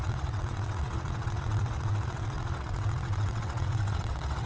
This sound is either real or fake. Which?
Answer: fake